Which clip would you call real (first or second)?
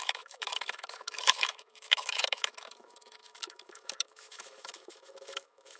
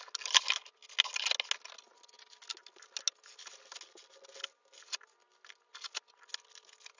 second